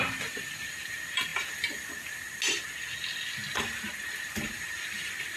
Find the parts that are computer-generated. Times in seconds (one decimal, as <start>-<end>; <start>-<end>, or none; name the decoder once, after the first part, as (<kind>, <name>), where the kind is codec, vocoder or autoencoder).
none